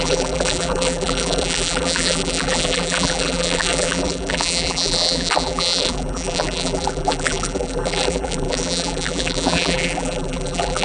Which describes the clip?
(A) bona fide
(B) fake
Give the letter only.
B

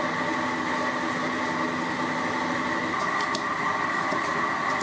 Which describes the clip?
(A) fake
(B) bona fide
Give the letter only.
B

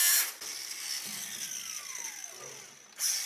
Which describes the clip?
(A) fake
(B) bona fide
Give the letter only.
B